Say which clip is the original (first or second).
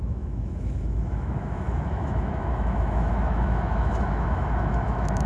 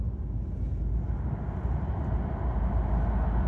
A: second